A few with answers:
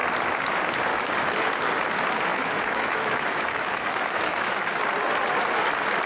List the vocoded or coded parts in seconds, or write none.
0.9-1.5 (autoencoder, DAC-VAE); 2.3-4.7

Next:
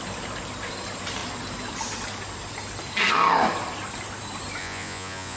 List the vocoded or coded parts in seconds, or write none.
4.6-5.4 (vocoder, Vocos)